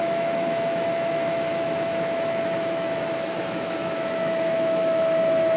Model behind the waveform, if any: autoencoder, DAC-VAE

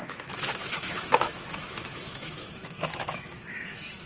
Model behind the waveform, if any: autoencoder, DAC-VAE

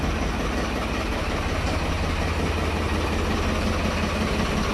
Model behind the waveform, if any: none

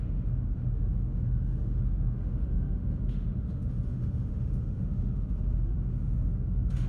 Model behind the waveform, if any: autoencoder, DAC-VAE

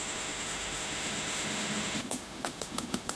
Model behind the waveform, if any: autoencoder, DAC-VAE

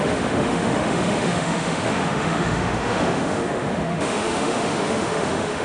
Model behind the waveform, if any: autoencoder, DAC-VAE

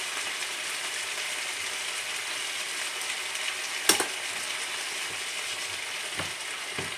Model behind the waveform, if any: none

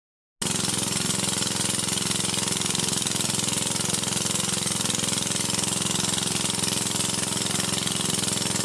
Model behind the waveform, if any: none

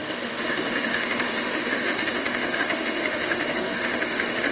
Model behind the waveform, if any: autoencoder, DAC-VAE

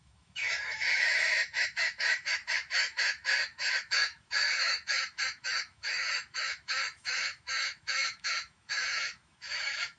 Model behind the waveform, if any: autoencoder, DAC-VAE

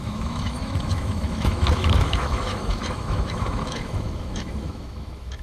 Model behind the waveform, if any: autoencoder, DAC-VAE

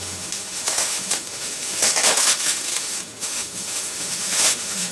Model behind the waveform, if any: autoencoder, DAC-VAE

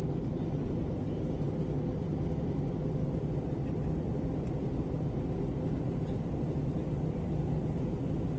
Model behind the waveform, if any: none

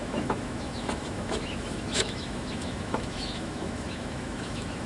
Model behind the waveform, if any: autoencoder, DAC-VAE